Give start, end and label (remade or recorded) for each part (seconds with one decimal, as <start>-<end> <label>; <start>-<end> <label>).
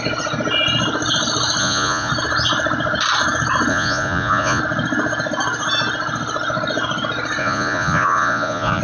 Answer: 0.0-1.6 recorded; 1.6-2.1 remade; 2.1-3.7 recorded; 3.7-4.6 remade; 4.6-7.4 recorded; 7.4-8.8 remade